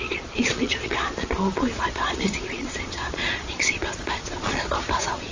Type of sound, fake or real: fake